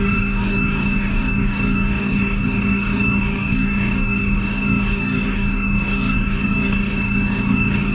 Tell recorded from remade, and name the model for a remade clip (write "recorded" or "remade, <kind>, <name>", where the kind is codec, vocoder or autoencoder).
remade, codec, DAC